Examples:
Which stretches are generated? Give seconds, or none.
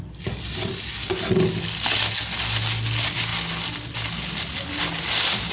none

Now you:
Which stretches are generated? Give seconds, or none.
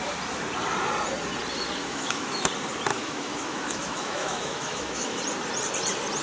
1.8-2.5 (autoencoder, DAC-VAE); 2.9-5.2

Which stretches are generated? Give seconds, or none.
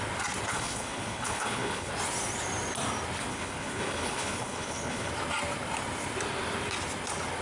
0.5-1.9 (codec, HILCodec); 3.3-5.1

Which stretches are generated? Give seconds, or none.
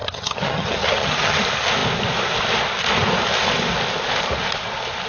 0.0-1.4 (vocoder, HiFi-GAN)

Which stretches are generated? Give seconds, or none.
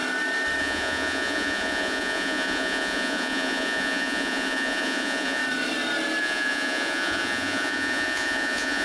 0.6-5.4 (vocoder, Vocos); 6.2-8.8